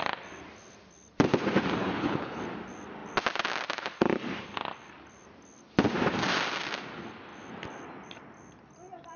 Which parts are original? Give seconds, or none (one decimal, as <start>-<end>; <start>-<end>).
0.0-1.8; 2.4-9.2